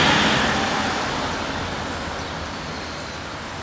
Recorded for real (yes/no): yes